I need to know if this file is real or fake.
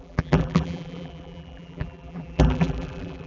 fake